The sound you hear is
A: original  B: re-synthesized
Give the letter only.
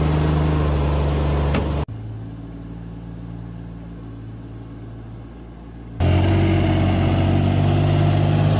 A